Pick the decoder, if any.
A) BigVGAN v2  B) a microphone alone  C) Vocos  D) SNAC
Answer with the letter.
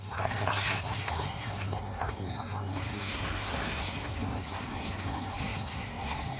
D